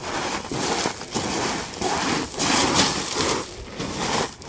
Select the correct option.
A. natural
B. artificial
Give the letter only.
A